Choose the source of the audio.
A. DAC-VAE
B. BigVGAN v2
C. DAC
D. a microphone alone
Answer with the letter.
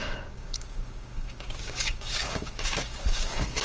C